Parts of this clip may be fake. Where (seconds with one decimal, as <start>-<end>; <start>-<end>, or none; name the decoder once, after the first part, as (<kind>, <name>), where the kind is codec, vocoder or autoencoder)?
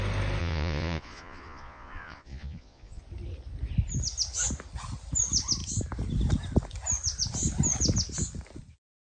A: 0.4-3.0 (vocoder, Vocos)